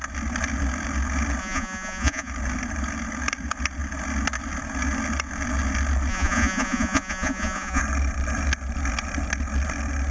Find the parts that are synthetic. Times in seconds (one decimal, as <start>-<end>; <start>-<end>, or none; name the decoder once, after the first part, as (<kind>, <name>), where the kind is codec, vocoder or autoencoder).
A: 1.4-2.3 (vocoder, Vocos); 6.1-7.8